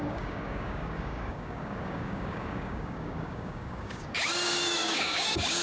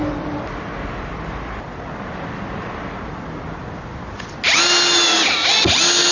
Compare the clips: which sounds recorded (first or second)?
second